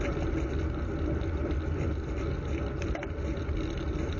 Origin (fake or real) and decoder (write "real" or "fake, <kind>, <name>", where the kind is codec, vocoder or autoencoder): real